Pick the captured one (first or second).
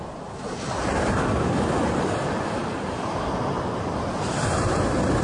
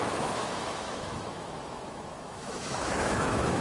first